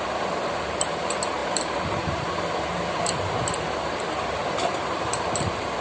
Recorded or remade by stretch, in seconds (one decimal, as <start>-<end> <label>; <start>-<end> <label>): 0.0-5.8 remade